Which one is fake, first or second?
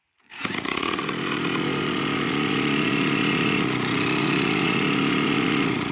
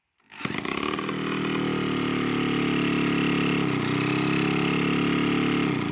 first